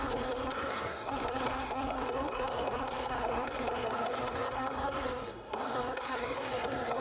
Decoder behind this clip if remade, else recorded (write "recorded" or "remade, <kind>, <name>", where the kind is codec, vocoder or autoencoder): remade, codec, SNAC